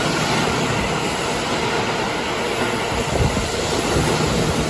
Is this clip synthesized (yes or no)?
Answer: no